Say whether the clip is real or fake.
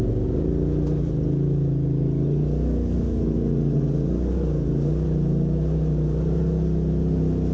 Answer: real